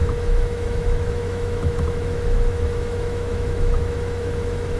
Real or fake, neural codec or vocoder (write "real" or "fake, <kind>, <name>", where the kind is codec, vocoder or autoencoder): fake, autoencoder, DAC-VAE